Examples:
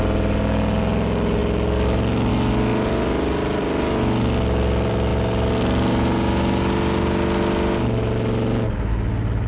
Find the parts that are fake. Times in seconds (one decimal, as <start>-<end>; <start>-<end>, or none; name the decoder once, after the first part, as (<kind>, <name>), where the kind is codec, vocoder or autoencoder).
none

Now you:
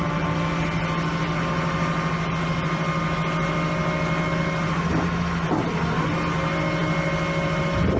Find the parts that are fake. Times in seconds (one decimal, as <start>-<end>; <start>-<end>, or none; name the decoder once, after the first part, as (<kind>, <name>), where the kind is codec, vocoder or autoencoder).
none

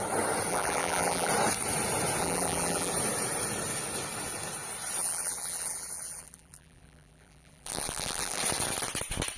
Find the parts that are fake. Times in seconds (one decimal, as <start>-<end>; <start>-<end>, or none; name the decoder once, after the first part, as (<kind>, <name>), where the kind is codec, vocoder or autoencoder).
0.5-1.3 (vocoder, BigVGAN v2); 2.2-2.9; 5.0-8.4

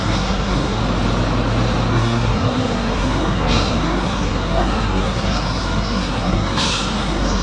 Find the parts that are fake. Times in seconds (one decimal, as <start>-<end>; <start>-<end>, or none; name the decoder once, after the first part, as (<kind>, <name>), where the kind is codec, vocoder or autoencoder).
0.0-0.8 (codec, SNAC); 1.9-7.4

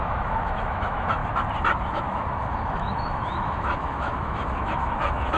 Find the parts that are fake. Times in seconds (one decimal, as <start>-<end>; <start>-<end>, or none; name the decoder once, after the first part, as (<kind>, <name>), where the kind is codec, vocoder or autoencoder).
0.0-1.2 (autoencoder, DAC-VAE); 1.8-5.4

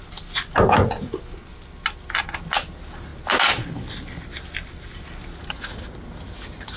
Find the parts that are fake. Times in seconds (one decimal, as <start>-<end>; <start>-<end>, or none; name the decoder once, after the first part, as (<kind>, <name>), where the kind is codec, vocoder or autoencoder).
none

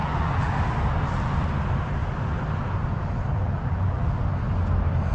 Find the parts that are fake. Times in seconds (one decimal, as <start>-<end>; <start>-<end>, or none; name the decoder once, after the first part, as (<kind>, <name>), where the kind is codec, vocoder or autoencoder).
0.0-0.5 (vocoder, BigVGAN v2); 3.3-4.2